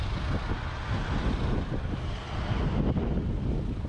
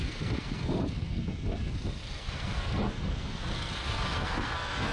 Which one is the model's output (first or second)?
second